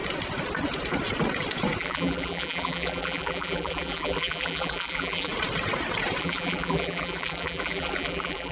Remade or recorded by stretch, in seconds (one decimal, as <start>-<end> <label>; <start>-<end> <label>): 0.0-1.8 recorded; 1.8-5.3 remade; 5.3-6.2 recorded; 6.2-8.5 remade